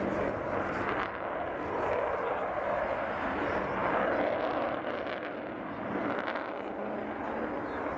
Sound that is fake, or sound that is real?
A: real